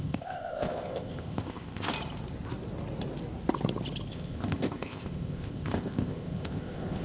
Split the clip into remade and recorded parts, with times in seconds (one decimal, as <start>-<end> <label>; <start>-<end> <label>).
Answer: 0.0-1.9 remade; 1.9-4.1 recorded; 4.1-7.0 remade